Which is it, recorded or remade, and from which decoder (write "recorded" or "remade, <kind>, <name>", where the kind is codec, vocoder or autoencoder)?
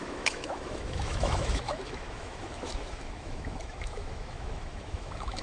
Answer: remade, autoencoder, DAC-VAE